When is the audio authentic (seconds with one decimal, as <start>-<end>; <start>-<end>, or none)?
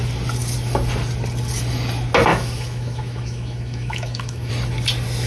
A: 0.0-2.3; 4.5-5.3